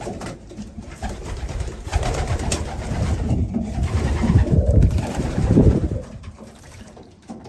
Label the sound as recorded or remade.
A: remade